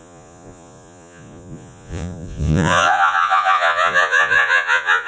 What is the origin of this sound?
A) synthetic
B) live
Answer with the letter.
A